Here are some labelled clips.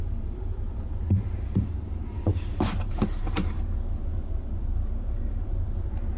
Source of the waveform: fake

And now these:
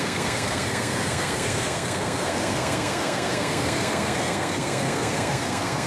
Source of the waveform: fake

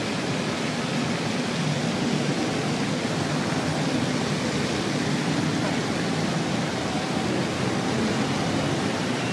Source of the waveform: real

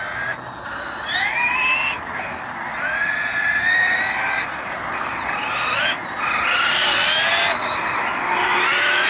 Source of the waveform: real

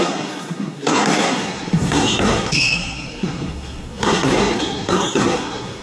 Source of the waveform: fake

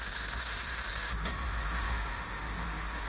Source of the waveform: fake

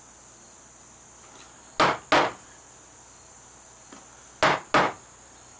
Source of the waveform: real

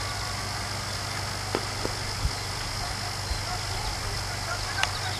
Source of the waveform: real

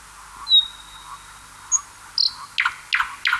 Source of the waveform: real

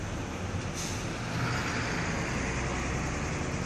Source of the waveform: real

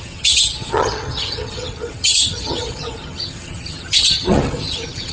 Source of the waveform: fake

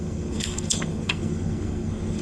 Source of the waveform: fake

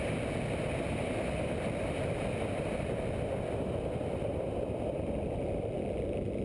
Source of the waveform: real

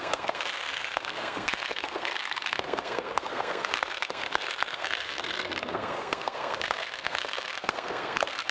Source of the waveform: fake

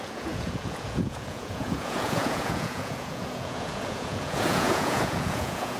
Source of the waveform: fake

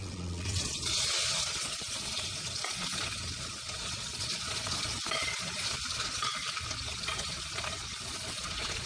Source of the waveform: fake